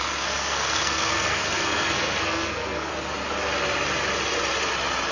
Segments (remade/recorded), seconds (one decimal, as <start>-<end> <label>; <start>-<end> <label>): 0.0-2.9 remade; 2.9-5.1 recorded